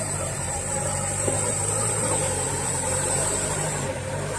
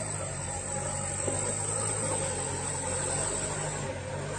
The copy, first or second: first